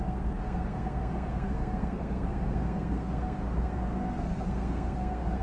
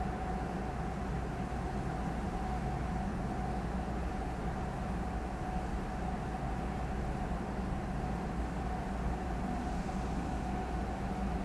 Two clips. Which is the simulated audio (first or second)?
first